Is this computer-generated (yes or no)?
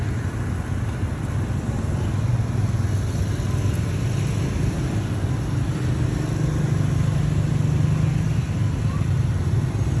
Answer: no